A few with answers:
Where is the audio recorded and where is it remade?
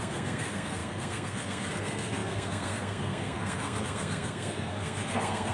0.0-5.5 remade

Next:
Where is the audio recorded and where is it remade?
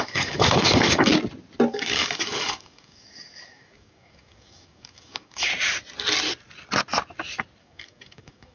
0.0-1.1 remade; 1.1-1.7 recorded; 1.7-5.5 remade; 5.5-7.6 recorded; 7.6-8.5 remade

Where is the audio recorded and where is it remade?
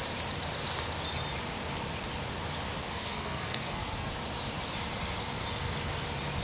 0.0-2.9 recorded; 2.9-4.1 remade; 4.1-6.4 recorded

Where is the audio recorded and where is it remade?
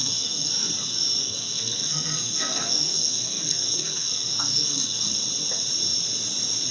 0.0-0.5 remade; 0.5-1.2 recorded; 1.2-5.2 remade; 5.2-6.7 recorded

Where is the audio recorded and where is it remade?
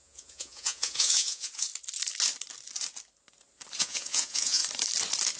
0.0-1.7 remade; 1.7-3.8 recorded; 3.8-4.6 remade; 4.6-5.4 recorded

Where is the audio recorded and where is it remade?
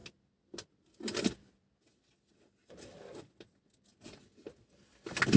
0.0-5.4 recorded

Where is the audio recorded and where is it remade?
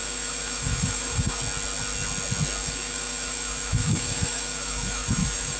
0.0-1.4 remade; 1.4-2.6 recorded; 2.6-5.6 remade